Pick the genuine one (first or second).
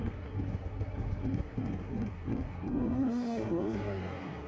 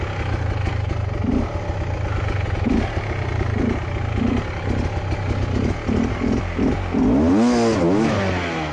second